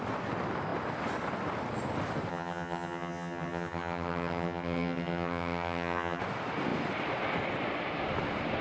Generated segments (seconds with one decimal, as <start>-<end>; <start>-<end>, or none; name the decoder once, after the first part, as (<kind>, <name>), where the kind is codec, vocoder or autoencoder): 2.3-6.2 (vocoder, HiFi-GAN)